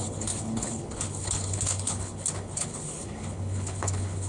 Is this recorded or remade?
remade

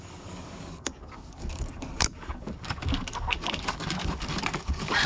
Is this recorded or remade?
remade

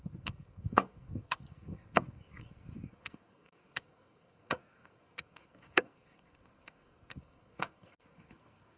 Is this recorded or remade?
remade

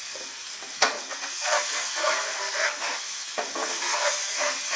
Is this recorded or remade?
remade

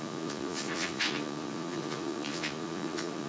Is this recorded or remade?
remade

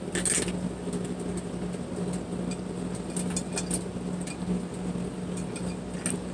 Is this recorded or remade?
recorded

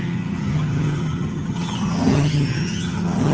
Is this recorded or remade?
remade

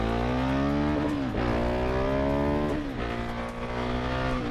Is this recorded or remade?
recorded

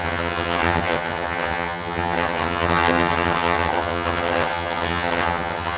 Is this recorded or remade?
remade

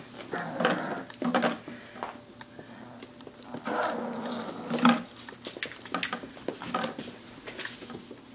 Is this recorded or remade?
recorded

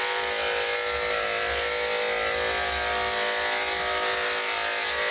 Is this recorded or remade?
recorded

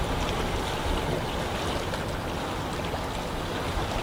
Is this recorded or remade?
recorded